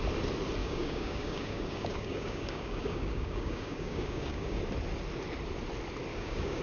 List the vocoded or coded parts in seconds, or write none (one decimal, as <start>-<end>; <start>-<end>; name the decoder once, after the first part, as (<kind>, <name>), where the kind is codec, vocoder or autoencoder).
0.6-4.6 (codec, DAC); 6.1-6.6